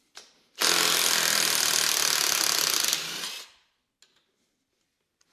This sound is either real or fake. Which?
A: real